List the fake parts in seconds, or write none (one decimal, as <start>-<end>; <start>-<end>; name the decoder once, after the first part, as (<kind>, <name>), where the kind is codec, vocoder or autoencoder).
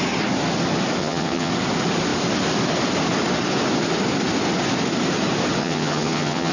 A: 1.0-1.5 (vocoder, HiFi-GAN); 5.6-6.5